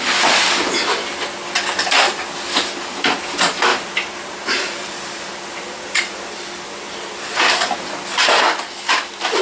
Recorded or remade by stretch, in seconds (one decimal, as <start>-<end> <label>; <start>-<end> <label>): 0.0-3.7 recorded; 3.7-7.8 remade; 7.8-9.4 recorded